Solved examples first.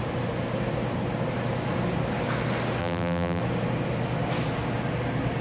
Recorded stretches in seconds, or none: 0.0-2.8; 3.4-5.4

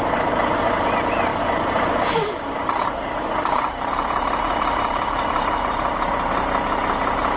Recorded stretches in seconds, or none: 0.0-1.3; 5.7-7.4

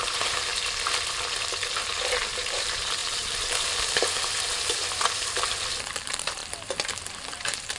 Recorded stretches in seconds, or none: 0.5-1.9; 6.4-7.1

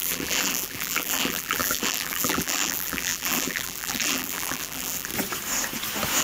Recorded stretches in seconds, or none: 5.1-6.2

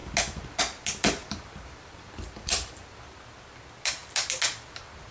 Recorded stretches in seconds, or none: 0.0-1.2; 2.7-5.1